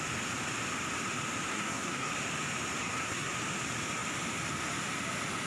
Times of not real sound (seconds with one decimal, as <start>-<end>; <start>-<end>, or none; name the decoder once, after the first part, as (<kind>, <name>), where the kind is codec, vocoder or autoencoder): 1.5-2.1 (codec, SNAC); 2.8-3.3